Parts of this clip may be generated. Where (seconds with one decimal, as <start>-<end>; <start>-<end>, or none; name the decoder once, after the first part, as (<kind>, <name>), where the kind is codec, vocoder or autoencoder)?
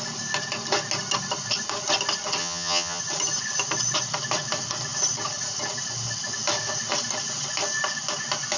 2.4-3.0 (vocoder, HiFi-GAN)